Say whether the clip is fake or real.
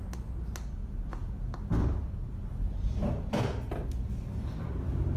real